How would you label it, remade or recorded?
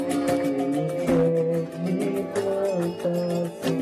recorded